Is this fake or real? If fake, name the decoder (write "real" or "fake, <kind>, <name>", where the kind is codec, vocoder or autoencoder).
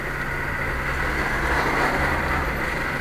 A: real